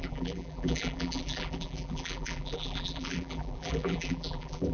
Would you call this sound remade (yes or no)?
yes